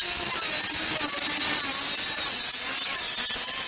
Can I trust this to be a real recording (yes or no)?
yes